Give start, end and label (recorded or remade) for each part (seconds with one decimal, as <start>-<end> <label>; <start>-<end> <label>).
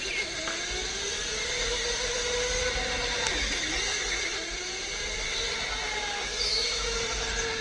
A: 0.0-6.5 recorded; 6.5-7.0 remade; 7.0-7.6 recorded